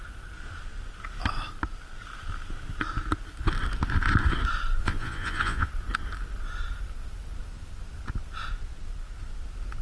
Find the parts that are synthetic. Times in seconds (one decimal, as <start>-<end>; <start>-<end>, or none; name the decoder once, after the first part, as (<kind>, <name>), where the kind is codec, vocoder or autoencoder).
4.8-5.7 (vocoder, Vocos)